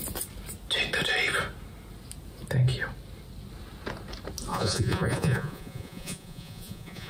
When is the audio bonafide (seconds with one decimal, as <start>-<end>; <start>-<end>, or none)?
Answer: 0.0-4.5